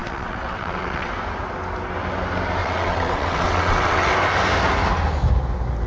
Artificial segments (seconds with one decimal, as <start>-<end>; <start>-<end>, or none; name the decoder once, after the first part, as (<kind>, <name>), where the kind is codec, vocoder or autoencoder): 0.0-1.1 (vocoder, WaveNeXt); 2.6-4.1